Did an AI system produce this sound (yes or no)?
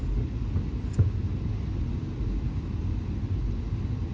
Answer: no